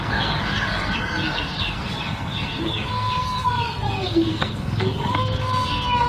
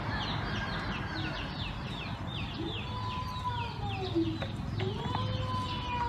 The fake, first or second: first